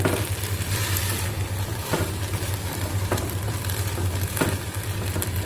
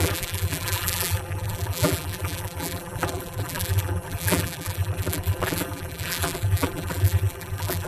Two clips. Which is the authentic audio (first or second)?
first